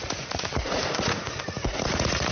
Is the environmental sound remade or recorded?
remade